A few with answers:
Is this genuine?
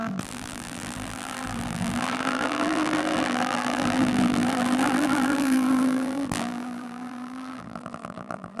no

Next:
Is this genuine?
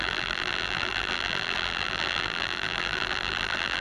no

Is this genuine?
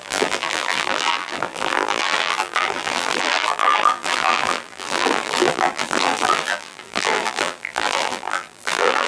no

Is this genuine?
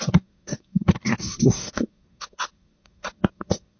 no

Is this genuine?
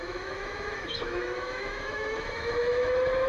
no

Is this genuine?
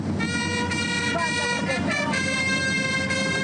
yes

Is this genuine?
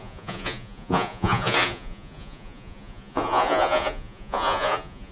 no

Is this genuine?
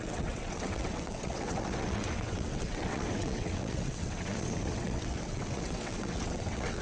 no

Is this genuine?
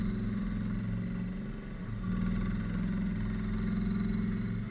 yes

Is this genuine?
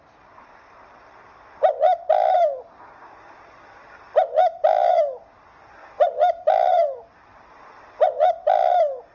no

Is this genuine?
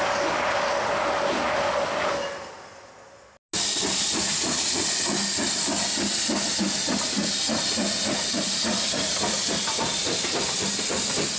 yes